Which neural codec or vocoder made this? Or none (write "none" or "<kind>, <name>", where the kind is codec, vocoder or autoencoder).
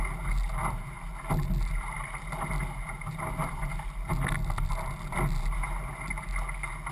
none